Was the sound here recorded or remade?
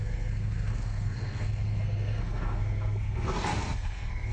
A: remade